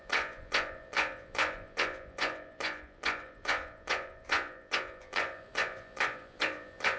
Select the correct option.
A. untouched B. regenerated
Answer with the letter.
B